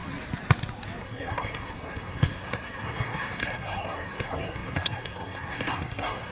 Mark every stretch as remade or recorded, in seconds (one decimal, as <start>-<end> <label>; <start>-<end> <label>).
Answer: 0.0-1.0 recorded; 1.0-6.3 remade